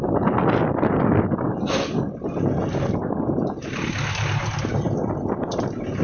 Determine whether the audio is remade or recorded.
recorded